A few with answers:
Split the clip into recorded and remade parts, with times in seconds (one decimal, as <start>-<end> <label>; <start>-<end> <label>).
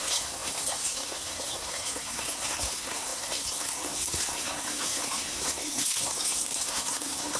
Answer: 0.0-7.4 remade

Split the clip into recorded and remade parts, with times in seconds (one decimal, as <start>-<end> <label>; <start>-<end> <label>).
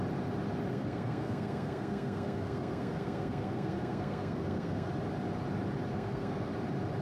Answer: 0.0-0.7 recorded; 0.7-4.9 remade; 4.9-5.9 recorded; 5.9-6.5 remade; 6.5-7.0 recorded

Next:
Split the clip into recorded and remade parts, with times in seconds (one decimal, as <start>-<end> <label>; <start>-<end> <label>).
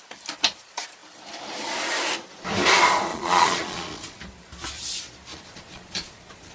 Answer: 0.0-3.1 recorded; 3.1-4.2 remade; 4.2-5.3 recorded; 5.3-6.5 remade